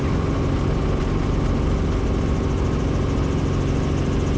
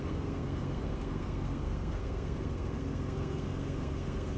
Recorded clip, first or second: first